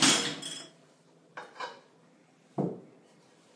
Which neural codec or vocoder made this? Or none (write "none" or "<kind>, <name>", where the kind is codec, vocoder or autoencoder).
none